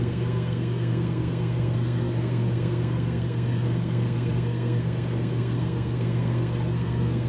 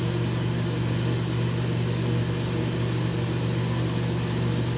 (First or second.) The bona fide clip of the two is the second